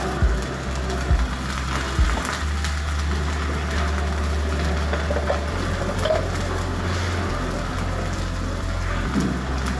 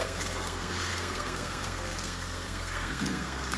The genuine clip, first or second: first